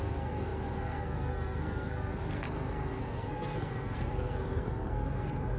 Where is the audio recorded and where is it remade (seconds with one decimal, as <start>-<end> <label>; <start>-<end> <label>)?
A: 0.0-5.6 remade